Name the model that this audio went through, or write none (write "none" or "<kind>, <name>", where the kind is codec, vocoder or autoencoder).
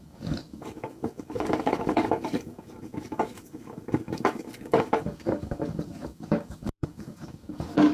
codec, DAC